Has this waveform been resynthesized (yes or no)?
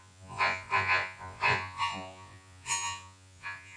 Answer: yes